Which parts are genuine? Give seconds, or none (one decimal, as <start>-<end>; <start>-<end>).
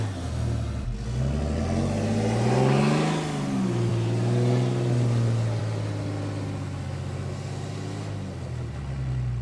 0.0-9.4